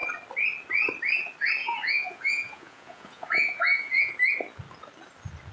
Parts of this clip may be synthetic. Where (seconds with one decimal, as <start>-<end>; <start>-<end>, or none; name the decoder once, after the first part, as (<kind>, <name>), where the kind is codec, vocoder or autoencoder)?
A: 1.6-4.1 (vocoder, Vocos)